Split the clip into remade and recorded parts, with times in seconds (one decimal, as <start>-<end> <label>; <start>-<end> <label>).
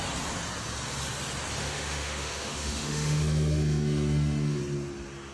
0.0-1.6 recorded; 1.6-4.6 remade; 4.6-5.3 recorded